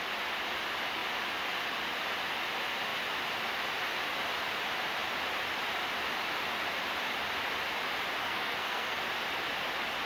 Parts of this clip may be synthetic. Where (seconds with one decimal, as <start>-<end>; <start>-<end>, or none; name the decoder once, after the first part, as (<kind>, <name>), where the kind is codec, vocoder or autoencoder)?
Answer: 8.2-9.0 (codec, SNAC)